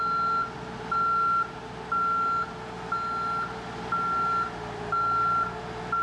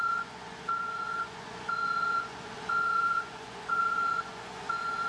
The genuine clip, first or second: first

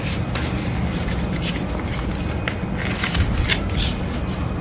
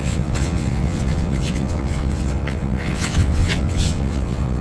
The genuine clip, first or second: first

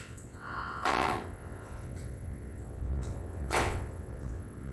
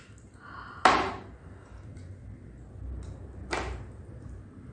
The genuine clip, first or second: second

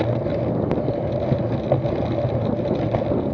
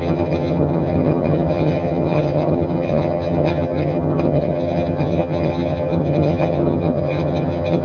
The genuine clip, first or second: first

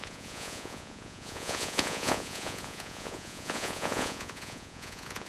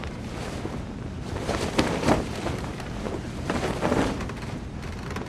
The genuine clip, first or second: second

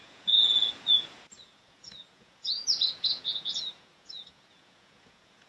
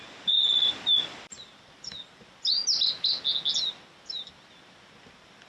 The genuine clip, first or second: second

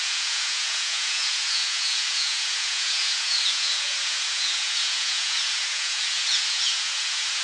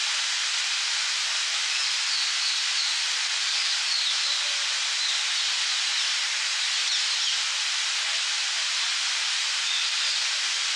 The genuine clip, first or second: second